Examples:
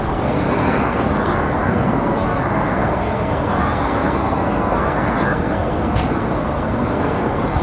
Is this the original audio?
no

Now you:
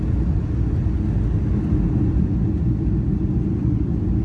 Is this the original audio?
yes